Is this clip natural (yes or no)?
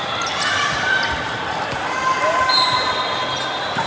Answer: yes